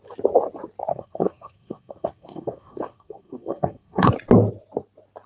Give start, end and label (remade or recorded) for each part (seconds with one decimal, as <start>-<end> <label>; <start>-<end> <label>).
0.0-0.9 recorded; 0.9-4.1 remade; 4.1-5.3 recorded